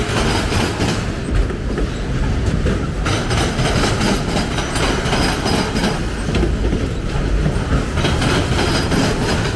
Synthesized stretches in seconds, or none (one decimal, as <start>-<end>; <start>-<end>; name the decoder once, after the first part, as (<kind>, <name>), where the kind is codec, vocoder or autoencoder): none